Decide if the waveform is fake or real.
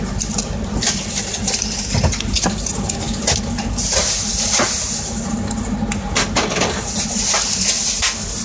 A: real